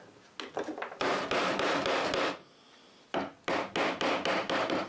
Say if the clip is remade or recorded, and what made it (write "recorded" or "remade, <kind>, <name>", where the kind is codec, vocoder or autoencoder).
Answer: recorded